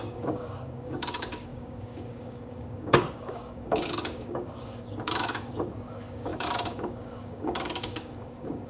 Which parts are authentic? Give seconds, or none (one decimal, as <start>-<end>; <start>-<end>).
none